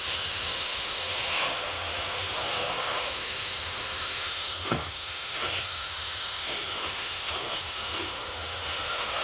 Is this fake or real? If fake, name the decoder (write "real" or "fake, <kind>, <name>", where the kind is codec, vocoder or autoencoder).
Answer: fake, autoencoder, DAC-VAE